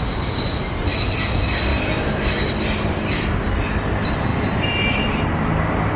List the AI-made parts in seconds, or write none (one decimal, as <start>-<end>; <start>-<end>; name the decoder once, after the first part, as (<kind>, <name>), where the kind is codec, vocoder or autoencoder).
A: 1.7-3.5 (vocoder, BigVGAN v2); 4.3-5.2